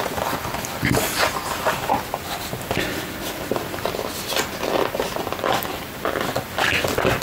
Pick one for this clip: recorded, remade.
recorded